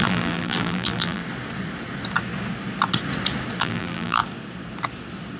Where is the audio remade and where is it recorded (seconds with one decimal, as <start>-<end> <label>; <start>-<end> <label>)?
0.0-1.2 remade; 1.2-3.6 recorded; 3.6-4.2 remade; 4.2-5.4 recorded